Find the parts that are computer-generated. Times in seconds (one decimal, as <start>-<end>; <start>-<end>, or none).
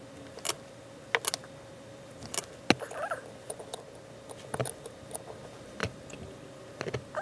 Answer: 5.8-6.5